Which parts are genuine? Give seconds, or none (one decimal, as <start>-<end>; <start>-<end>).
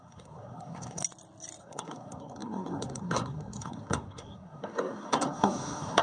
1.0-1.6